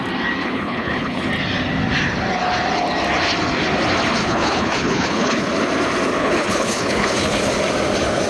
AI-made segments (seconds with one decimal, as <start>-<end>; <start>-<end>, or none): 0.4-1.3; 4.2-5.5; 6.2-7.4